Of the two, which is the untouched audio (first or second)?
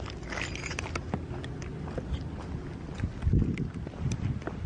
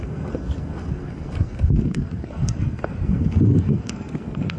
first